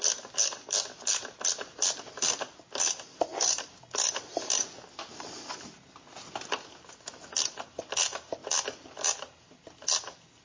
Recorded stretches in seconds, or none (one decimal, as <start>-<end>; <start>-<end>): 0.0-10.4